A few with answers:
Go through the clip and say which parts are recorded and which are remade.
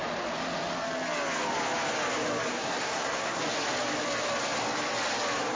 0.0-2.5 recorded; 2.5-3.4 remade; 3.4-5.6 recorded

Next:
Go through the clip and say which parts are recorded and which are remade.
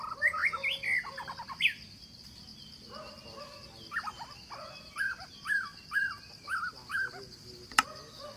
0.0-8.4 recorded